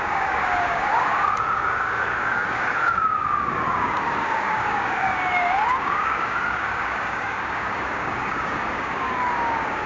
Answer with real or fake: fake